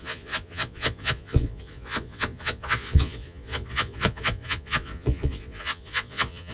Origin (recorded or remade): remade